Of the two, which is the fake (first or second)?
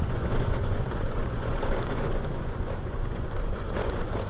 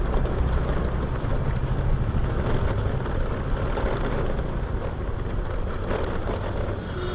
first